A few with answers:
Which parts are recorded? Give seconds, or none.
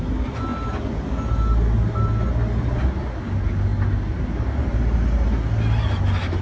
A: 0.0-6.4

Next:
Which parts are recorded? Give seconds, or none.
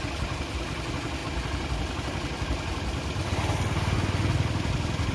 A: 0.0-5.1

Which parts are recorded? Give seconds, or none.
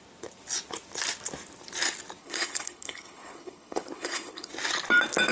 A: 0.0-2.2; 4.5-5.3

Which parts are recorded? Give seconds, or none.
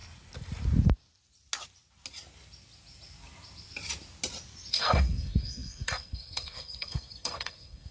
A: 0.0-4.7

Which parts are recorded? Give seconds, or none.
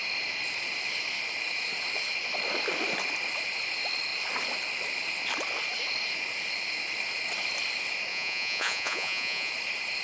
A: 0.0-8.1; 9.5-10.0